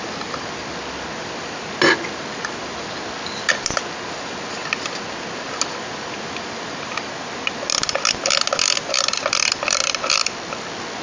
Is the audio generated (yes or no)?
no